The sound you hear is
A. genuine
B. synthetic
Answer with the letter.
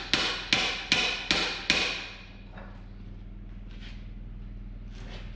A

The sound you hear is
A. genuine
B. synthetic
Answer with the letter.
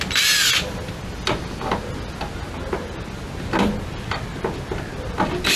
A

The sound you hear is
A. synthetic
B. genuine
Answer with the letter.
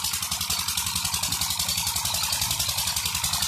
B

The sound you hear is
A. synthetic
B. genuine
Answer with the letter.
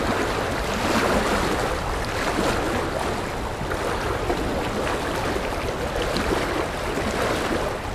B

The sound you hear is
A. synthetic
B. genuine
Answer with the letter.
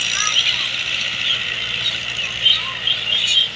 B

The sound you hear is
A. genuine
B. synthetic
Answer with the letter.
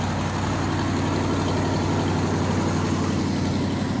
A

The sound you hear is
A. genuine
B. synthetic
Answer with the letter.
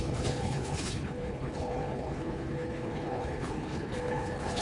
B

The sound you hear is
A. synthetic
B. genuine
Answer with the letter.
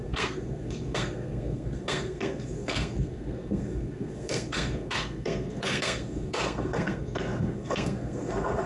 A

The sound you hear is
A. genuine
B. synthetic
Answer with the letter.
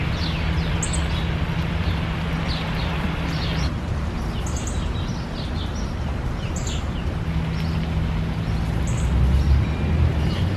A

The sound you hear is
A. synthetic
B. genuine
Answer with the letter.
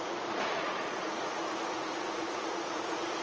A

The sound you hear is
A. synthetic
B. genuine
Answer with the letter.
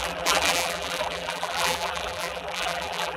A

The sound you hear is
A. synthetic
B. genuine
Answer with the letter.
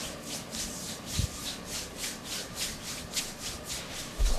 B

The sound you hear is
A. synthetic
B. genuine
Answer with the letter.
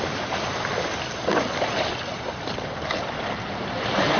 B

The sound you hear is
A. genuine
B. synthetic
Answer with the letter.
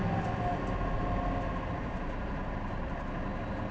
A